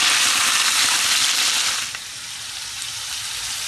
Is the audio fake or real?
real